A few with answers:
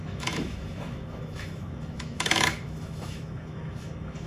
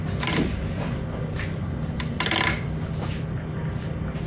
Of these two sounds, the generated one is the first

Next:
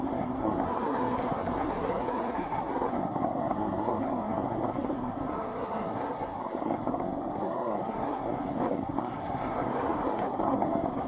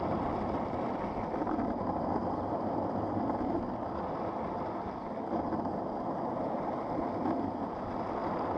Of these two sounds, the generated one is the first